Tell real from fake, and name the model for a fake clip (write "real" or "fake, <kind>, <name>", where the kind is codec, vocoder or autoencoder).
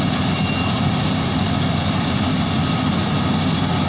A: real